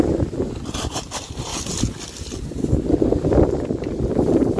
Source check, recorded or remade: remade